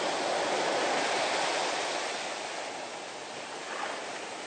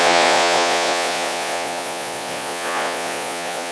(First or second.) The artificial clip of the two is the second